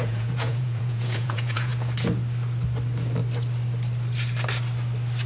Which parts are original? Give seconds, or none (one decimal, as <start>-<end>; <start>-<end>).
1.7-5.3

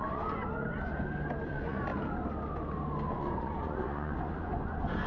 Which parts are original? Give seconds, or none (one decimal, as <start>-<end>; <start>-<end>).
0.9-1.5; 1.9-3.1

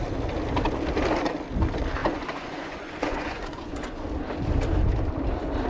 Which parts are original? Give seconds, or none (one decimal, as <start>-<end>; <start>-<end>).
0.0-2.0; 4.0-5.7